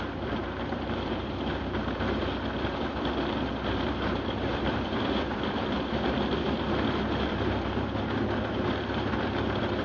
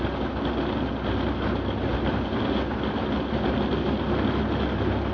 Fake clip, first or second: first